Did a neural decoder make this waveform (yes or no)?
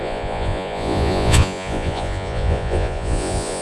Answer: yes